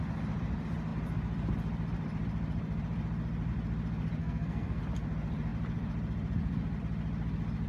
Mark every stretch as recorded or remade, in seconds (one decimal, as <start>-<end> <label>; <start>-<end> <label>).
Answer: 0.0-4.2 recorded; 4.2-4.8 remade; 4.8-7.7 recorded